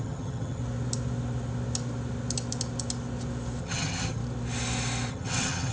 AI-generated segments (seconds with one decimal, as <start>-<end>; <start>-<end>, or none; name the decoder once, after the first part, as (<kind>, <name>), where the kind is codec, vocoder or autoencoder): 0.0-0.6 (vocoder, HiFi-GAN); 3.6-4.2; 5.1-5.7